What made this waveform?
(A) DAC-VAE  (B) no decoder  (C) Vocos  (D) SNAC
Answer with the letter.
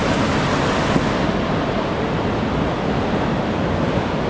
B